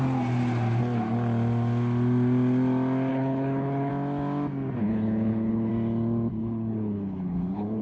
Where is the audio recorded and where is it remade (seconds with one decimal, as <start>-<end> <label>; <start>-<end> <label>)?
0.0-3.1 recorded; 3.1-3.9 remade; 3.9-4.8 recorded; 4.8-5.7 remade; 5.7-6.4 recorded; 6.4-7.8 remade